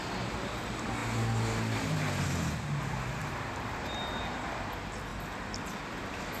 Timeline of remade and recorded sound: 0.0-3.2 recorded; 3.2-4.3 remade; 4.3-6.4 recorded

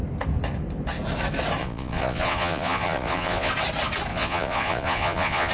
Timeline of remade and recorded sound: 0.0-1.6 recorded; 1.6-3.5 remade; 3.5-4.1 recorded; 4.1-5.5 remade